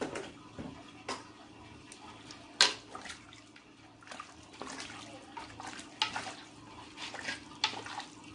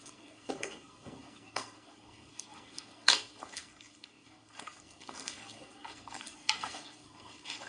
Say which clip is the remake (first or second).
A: second